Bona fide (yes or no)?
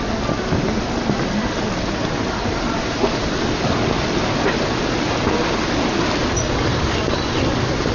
yes